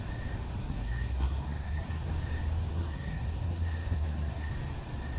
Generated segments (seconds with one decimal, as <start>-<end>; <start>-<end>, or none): 0.6-2.1; 2.7-4.5